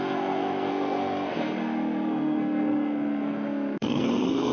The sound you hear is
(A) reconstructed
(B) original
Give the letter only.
A